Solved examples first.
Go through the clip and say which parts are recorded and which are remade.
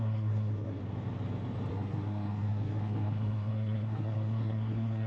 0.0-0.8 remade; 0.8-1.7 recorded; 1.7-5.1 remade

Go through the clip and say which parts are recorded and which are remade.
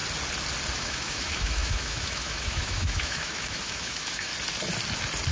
0.0-0.7 recorded; 0.7-4.3 remade; 4.3-5.3 recorded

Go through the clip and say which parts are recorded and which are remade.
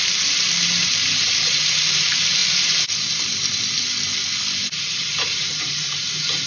0.0-2.4 remade; 2.4-4.9 recorded; 4.9-6.5 remade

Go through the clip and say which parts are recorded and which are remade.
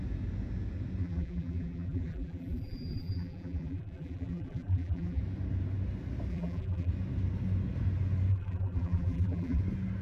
0.0-1.0 recorded; 1.0-5.2 remade; 5.2-6.3 recorded; 6.3-6.9 remade; 6.9-8.3 recorded; 8.3-9.6 remade; 9.6-10.0 recorded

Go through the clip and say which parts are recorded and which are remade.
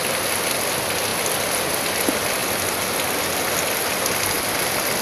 0.0-5.0 recorded